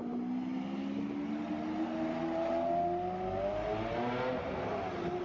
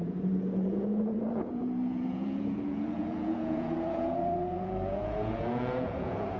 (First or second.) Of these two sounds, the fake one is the second